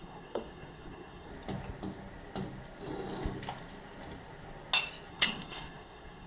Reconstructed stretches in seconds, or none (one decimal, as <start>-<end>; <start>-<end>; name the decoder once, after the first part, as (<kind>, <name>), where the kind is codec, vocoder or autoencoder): 0.0-1.3 (codec, SNAC); 5.1-6.3